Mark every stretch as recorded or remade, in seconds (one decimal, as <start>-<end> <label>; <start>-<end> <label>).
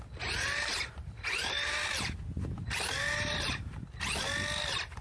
0.0-0.7 recorded; 0.7-3.7 remade; 3.7-5.0 recorded